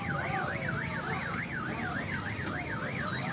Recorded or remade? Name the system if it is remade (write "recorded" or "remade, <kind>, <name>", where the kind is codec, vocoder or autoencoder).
recorded